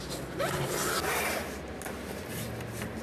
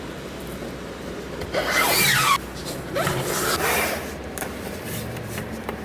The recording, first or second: first